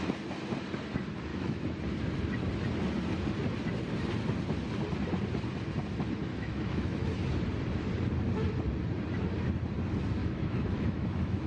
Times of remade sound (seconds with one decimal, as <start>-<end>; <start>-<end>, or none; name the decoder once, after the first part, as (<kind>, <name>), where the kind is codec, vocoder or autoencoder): 1.3-1.8 (autoencoder, DAC-VAE); 6.3-7.1; 10.2-11.5